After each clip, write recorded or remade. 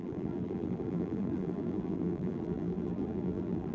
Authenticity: remade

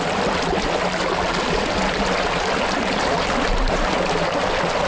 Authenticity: recorded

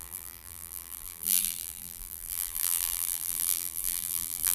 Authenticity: remade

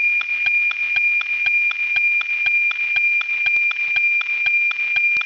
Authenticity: recorded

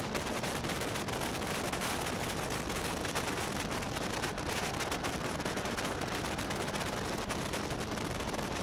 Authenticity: recorded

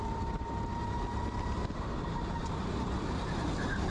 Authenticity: recorded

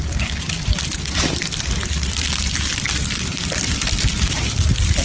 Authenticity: remade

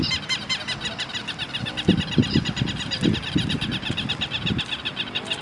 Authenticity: recorded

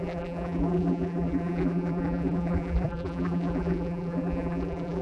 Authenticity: remade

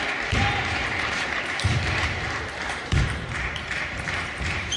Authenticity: remade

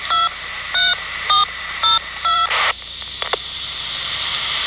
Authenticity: remade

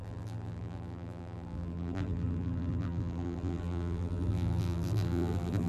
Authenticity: remade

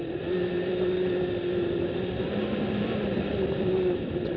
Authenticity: remade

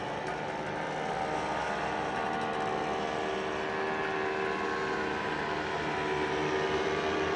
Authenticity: recorded